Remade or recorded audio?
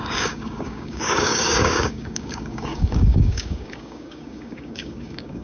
remade